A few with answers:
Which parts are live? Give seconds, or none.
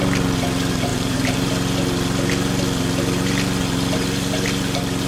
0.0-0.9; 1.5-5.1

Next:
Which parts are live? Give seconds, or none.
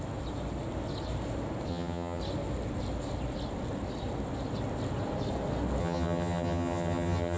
0.0-1.7; 2.2-5.8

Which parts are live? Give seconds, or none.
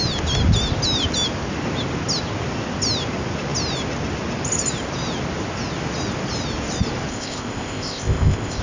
0.0-7.1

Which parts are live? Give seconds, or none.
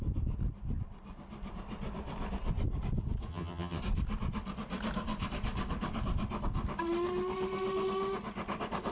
0.0-3.3; 3.8-8.9